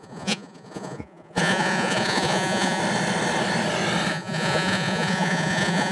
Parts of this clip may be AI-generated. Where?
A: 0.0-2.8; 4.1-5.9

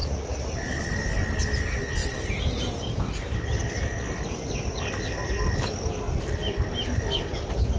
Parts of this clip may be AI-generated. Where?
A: 0.0-0.6